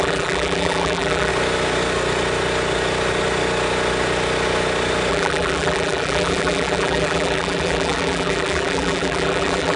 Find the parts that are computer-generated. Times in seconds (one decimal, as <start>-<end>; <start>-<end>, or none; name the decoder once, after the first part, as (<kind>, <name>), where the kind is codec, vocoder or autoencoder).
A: 0.0-1.3 (vocoder, BigVGAN v2); 5.1-9.8